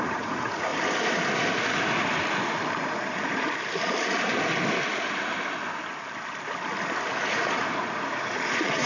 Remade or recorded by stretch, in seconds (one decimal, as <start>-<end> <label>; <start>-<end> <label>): 0.0-0.7 remade; 0.7-2.8 recorded; 2.8-3.5 remade; 3.5-7.2 recorded; 7.2-8.9 remade